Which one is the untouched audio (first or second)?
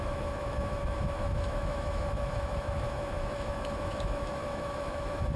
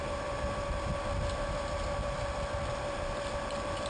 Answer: second